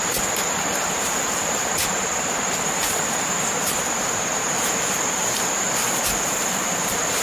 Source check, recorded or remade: remade